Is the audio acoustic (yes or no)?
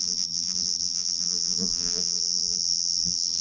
no